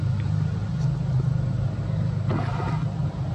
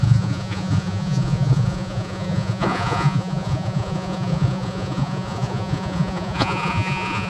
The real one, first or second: first